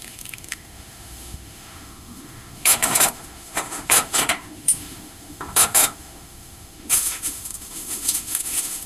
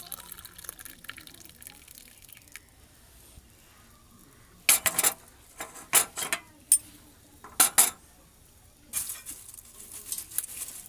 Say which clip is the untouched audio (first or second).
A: second